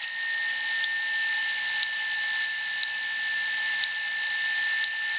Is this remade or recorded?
recorded